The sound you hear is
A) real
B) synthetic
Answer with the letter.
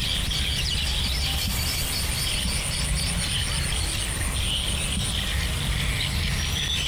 A